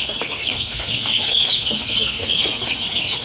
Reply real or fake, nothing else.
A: fake